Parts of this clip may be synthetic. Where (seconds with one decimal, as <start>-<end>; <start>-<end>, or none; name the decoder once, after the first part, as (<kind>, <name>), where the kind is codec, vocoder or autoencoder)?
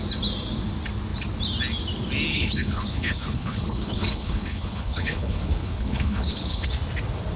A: 2.3-6.7 (codec, HILCodec)